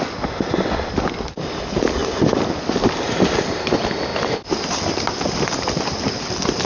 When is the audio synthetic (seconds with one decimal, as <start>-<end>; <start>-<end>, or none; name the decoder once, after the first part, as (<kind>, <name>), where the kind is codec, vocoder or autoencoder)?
none